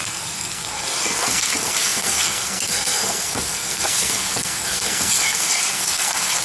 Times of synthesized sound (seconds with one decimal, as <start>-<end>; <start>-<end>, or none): 0.0-6.4